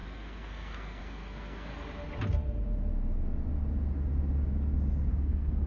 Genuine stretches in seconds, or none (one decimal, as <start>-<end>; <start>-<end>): 1.7-5.1